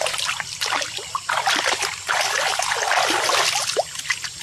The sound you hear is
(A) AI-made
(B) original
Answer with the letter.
B